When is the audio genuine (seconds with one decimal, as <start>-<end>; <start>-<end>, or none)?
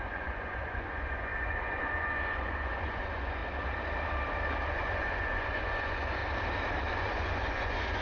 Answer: 3.4-4.7; 6.2-6.9